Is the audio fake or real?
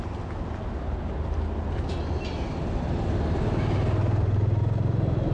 real